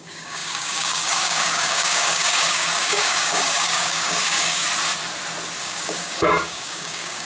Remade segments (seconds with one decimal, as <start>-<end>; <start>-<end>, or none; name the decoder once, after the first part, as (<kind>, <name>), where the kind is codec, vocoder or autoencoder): 0.0-4.6 (codec, DAC); 5.6-7.2